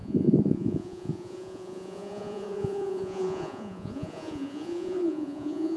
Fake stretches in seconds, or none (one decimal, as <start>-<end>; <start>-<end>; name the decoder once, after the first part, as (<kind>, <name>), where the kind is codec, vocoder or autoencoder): 0.0-5.8 (vocoder, Vocos)